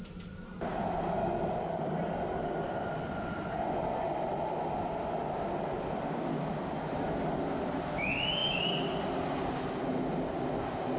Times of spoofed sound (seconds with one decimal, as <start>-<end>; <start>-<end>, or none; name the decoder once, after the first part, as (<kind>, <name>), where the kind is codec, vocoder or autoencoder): none